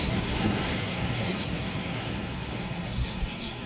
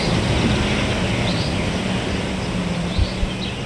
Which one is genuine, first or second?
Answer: second